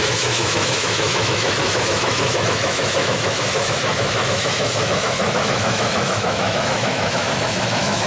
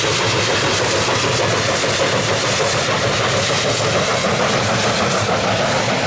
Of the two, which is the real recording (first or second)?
second